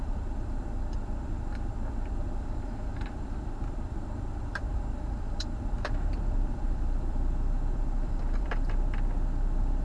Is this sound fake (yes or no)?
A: yes